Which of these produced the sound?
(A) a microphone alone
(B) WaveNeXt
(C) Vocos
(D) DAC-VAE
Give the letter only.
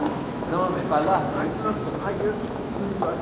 D